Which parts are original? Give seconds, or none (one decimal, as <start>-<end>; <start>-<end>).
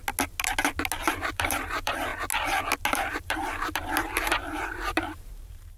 0.0-1.1; 2.1-2.9